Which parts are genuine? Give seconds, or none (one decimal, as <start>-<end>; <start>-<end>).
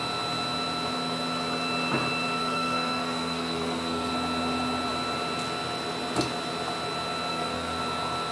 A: 0.0-2.4; 4.1-7.3; 7.8-8.3